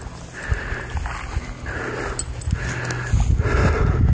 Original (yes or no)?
yes